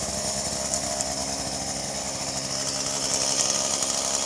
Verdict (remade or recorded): recorded